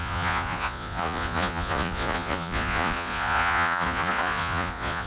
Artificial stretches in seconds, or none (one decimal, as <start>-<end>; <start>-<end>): 0.0-5.1